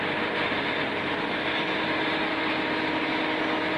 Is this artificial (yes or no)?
no